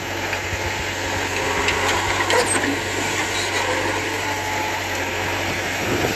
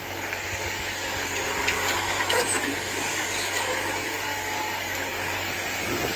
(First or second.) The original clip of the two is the first